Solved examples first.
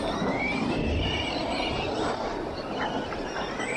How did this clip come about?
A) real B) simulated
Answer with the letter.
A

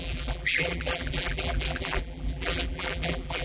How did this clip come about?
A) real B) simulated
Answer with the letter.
B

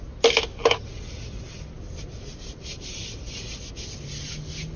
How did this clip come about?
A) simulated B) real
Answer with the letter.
B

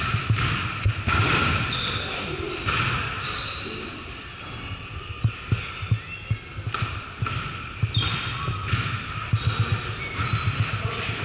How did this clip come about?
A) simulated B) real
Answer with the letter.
B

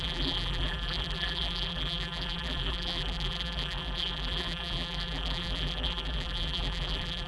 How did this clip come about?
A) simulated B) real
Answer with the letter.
A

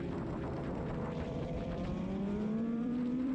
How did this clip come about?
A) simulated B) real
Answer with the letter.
A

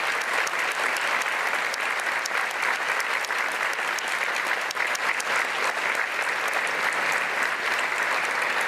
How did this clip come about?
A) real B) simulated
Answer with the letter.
A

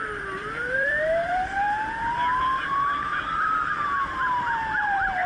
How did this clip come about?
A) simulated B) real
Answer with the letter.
A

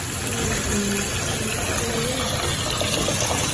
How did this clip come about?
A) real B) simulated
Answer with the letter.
A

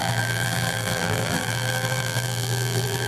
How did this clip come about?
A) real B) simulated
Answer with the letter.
B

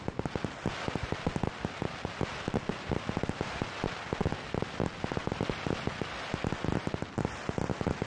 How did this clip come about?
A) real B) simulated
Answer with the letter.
B